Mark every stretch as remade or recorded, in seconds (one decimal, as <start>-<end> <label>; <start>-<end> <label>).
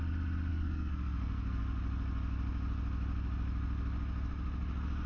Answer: 0.0-0.5 recorded; 0.5-1.6 remade; 1.6-5.1 recorded